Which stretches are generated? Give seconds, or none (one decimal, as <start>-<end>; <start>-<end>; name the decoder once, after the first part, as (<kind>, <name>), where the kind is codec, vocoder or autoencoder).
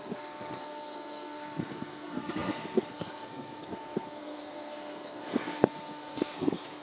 0.0-6.8 (codec, SNAC)